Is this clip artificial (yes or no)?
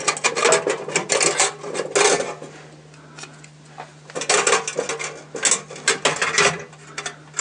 no